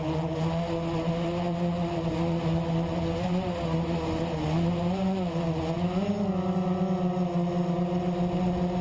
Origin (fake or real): real